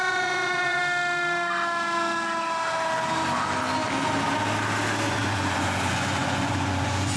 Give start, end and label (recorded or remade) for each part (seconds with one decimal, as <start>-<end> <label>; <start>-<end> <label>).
0.0-0.8 remade; 0.8-5.1 recorded; 5.1-7.2 remade